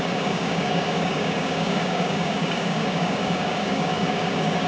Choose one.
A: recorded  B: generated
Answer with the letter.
B